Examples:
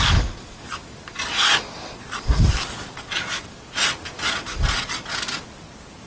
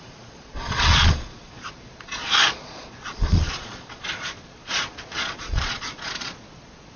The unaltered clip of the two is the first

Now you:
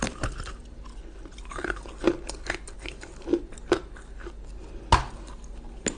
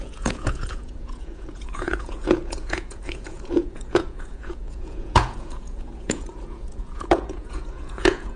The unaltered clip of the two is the first